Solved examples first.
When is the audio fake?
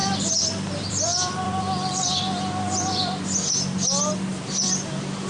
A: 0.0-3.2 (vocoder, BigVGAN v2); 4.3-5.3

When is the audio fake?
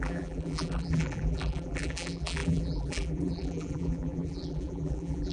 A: 0.0-5.3 (vocoder, BigVGAN v2)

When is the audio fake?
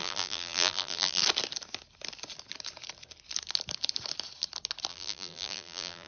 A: 0.0-1.2 (vocoder, BigVGAN v2); 4.9-6.1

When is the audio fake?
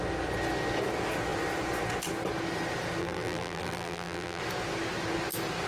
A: 3.0-4.4 (vocoder, BigVGAN v2)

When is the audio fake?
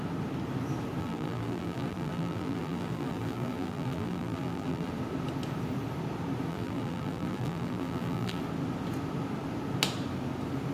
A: 1.0-4.9 (vocoder, BigVGAN v2); 6.5-8.4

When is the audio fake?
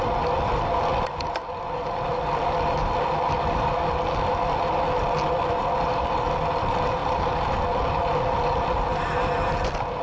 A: 7.0-7.6 (vocoder, BigVGAN v2)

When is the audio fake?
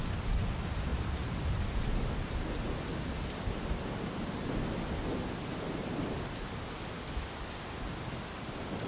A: none